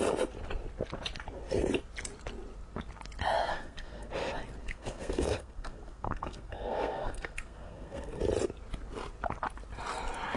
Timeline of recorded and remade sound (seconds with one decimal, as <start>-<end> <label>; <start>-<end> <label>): 0.0-3.4 recorded; 3.4-4.1 remade; 4.1-4.6 recorded; 4.6-8.2 remade; 8.2-10.4 recorded